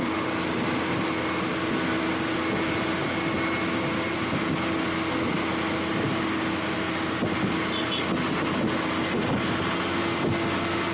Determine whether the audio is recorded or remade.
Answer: recorded